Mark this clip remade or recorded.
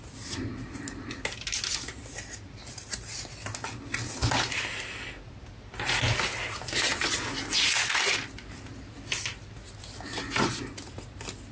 recorded